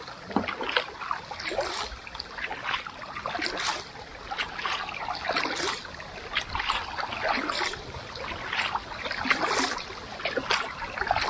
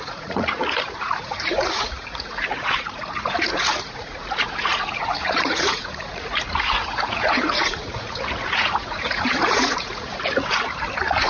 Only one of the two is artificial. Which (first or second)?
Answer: second